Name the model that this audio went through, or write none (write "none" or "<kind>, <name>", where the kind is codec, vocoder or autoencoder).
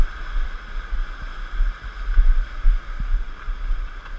none